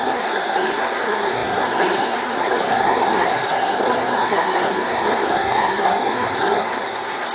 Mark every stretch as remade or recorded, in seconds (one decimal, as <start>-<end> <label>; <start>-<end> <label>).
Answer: 0.0-7.3 remade